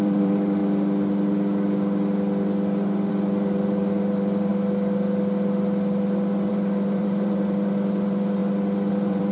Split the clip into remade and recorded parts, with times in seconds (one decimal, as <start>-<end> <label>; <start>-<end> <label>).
0.0-0.6 remade; 0.6-3.1 recorded; 3.1-4.5 remade; 4.5-6.5 recorded; 6.5-8.4 remade; 8.4-8.9 recorded; 8.9-9.3 remade